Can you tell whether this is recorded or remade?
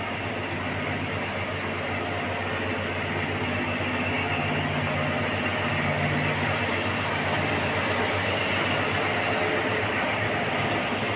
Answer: recorded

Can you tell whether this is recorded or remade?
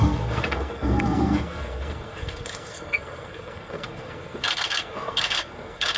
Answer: remade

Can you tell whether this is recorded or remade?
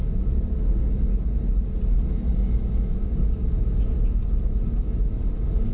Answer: recorded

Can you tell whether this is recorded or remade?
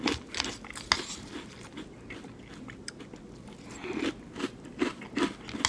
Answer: recorded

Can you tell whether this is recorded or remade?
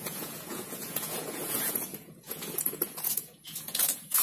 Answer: remade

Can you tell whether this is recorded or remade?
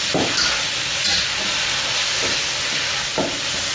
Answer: recorded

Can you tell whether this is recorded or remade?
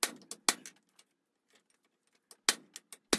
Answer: recorded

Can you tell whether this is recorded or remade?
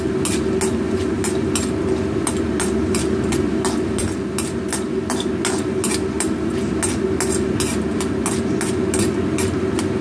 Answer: recorded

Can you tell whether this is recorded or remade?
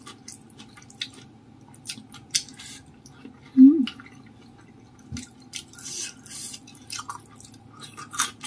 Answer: recorded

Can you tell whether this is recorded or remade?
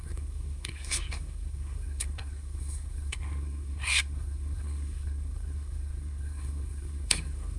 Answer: remade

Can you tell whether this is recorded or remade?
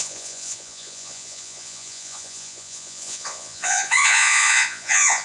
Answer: remade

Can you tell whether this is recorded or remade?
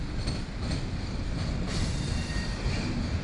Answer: remade